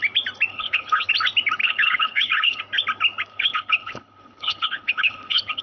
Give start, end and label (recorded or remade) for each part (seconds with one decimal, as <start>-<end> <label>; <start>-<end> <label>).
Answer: 0.0-0.5 recorded; 0.5-1.1 remade; 1.1-1.6 recorded; 1.6-2.6 remade; 2.6-3.3 recorded; 3.3-5.6 remade